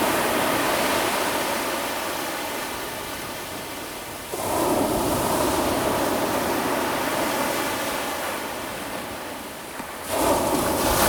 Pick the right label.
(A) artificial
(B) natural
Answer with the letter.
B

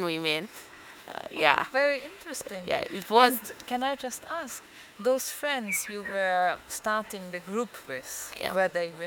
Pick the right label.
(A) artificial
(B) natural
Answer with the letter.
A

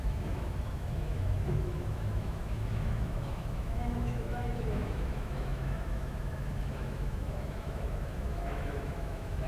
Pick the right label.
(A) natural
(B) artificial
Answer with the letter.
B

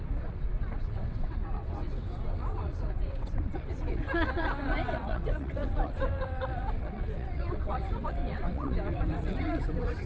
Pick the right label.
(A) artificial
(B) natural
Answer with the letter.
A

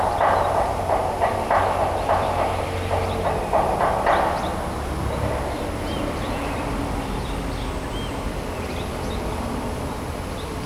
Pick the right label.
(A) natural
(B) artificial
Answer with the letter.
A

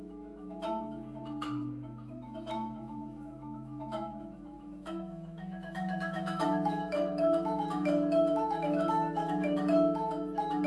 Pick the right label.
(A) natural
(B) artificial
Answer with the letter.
B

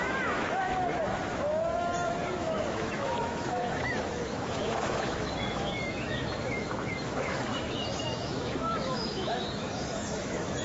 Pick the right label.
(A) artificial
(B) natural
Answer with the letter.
A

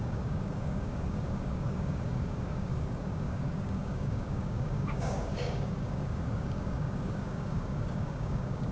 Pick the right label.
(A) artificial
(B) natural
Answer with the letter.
A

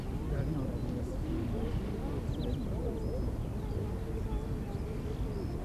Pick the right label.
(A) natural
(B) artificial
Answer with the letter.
A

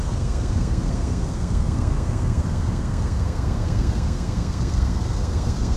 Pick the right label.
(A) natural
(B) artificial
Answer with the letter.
B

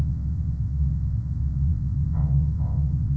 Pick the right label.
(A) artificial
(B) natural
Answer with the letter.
A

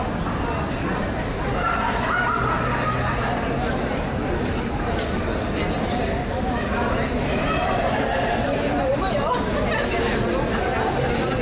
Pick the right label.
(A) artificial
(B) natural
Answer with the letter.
B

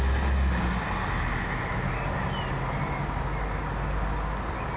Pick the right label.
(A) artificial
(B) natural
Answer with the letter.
B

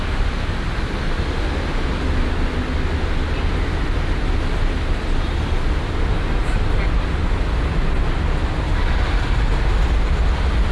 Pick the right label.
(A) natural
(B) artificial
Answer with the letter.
A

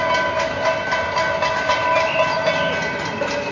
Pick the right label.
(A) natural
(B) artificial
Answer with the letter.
A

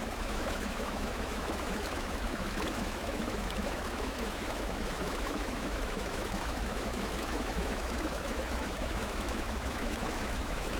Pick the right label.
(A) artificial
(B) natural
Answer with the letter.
A